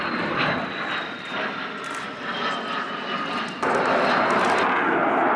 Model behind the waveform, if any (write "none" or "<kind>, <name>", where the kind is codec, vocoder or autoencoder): none